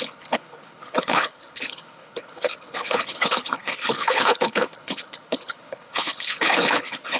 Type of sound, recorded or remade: remade